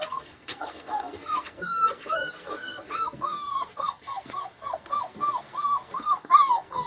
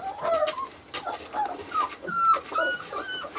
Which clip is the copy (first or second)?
first